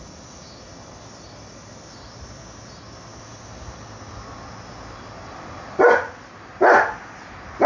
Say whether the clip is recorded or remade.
recorded